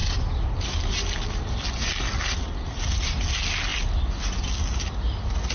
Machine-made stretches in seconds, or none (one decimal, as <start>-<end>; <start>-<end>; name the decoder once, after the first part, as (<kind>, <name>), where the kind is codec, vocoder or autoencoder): none